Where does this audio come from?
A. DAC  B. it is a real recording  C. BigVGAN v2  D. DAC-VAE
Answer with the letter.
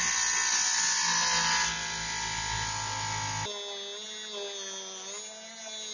B